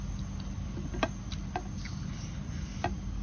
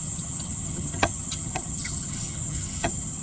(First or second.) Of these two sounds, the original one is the first